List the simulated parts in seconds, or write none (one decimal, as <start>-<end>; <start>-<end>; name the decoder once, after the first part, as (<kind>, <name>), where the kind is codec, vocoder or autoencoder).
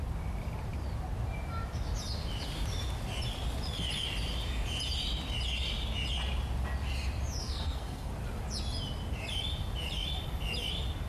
7.4-8.1 (codec, SNAC)